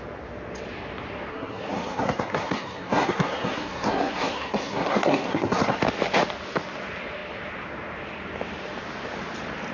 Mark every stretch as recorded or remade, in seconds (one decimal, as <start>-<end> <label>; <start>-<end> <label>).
0.0-1.3 recorded; 1.3-5.8 remade; 5.8-9.7 recorded